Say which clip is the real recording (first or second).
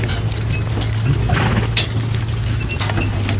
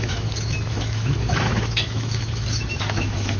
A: first